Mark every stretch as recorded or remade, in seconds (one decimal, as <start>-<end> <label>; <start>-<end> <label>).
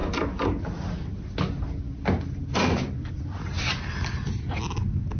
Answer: 0.0-5.2 recorded